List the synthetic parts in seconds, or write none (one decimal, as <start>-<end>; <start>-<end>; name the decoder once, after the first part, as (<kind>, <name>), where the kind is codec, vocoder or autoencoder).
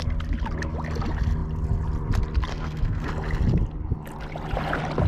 2.5-3.1 (codec, SNAC)